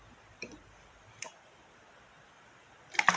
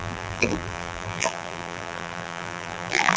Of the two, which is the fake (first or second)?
second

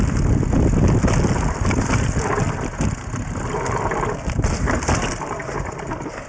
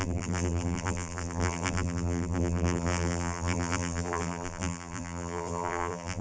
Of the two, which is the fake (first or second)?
second